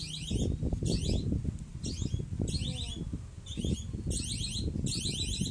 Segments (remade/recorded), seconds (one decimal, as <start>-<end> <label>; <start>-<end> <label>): 0.0-5.5 recorded